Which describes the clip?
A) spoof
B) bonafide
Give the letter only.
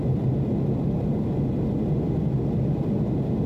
B